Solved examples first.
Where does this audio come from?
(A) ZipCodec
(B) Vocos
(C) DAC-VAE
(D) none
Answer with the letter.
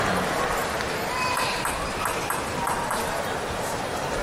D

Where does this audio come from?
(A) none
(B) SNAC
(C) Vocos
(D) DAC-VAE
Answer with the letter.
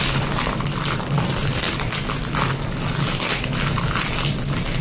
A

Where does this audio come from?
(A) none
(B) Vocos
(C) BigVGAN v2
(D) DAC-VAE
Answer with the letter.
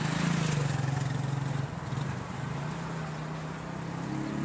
A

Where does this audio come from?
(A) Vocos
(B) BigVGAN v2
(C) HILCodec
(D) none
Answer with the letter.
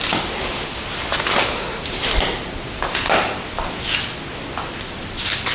D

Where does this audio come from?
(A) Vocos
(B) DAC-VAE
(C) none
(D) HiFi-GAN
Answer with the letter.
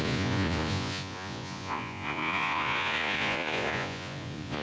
A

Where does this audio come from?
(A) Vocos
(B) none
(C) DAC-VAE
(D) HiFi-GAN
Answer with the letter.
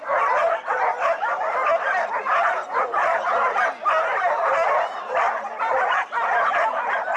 B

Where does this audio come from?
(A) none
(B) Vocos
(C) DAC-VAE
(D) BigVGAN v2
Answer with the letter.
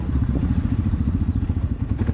B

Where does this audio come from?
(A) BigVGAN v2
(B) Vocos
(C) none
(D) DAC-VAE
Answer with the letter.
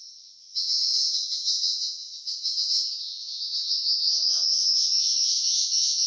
B